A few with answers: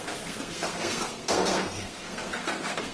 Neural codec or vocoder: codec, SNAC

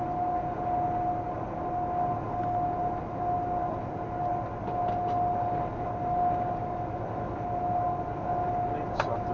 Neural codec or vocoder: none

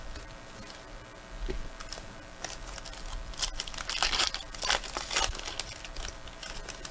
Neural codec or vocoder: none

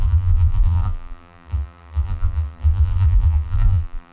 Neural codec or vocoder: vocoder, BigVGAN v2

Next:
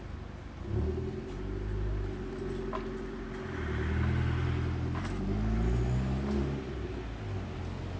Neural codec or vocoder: none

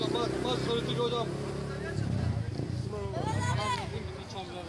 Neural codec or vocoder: none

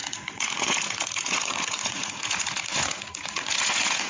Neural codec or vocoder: vocoder, Vocos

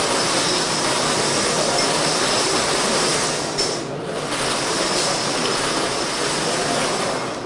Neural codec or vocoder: none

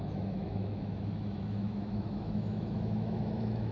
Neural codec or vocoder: autoencoder, DAC-VAE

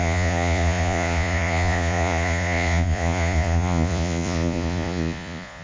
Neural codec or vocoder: vocoder, Vocos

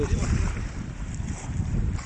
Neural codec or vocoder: none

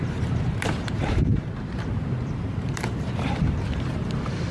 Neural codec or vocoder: vocoder, BigVGAN v2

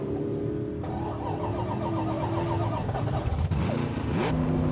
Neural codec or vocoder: none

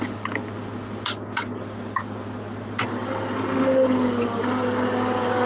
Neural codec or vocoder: none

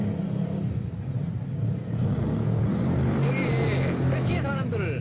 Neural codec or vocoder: none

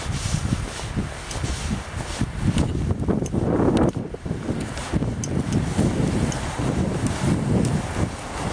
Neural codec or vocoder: none